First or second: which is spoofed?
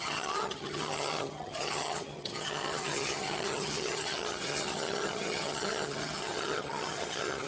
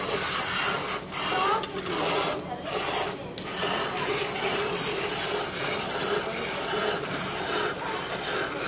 first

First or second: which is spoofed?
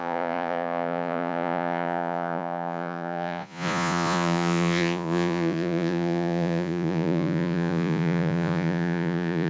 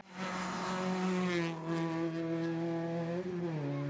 first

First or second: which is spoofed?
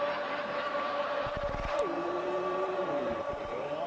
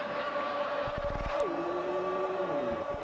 first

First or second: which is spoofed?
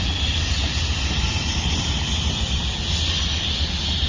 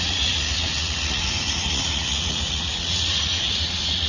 second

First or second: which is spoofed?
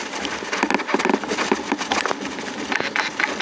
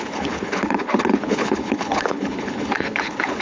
second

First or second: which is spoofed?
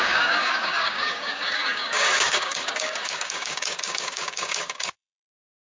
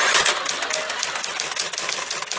first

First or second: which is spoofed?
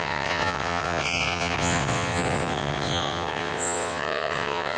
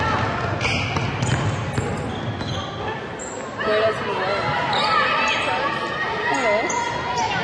first